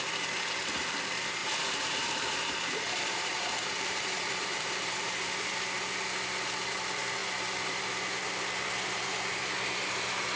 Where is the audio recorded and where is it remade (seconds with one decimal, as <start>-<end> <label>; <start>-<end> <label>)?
0.0-1.4 recorded; 1.4-5.2 remade; 5.2-10.4 recorded